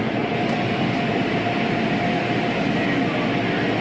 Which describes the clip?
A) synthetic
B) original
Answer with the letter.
B